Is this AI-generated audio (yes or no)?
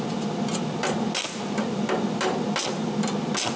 no